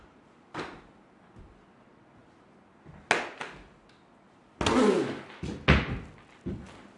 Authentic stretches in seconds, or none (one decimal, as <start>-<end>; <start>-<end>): 0.0-7.0